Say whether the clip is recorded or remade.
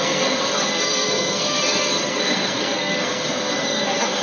remade